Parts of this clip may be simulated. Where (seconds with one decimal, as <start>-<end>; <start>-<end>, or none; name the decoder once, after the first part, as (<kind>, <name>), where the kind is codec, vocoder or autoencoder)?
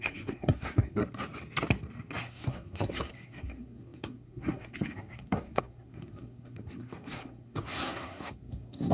0.0-1.0 (codec, SNAC); 2.2-8.9